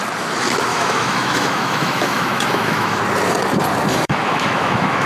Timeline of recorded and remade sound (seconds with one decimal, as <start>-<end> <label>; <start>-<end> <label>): 0.0-0.7 recorded; 0.7-3.0 remade; 3.0-3.9 recorded; 3.9-5.1 remade